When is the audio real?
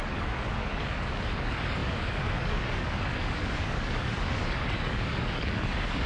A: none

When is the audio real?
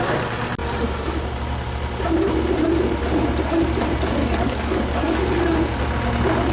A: 0.0-4.2; 5.2-6.5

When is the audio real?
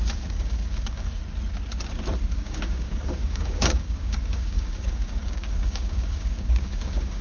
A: 1.2-2.3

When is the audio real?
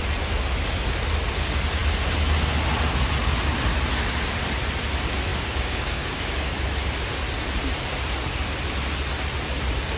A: 0.0-5.3; 6.5-10.0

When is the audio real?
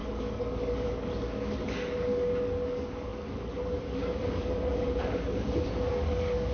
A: none